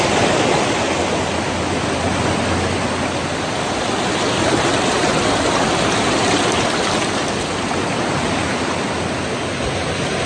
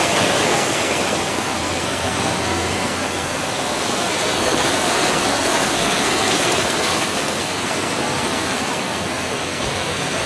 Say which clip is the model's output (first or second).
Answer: second